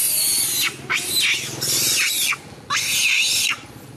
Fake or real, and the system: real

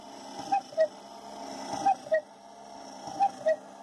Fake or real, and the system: fake, vocoder, BigVGAN v2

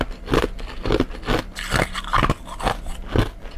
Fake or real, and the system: real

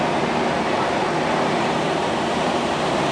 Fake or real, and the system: fake, vocoder, BigVGAN v2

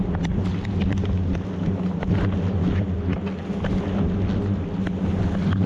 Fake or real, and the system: real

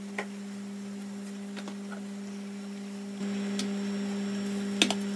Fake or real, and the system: real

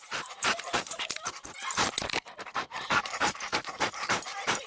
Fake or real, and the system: fake, vocoder, BigVGAN v2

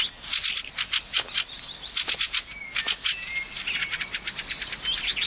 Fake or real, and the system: real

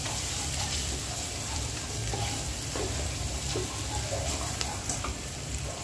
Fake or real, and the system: fake, vocoder, BigVGAN v2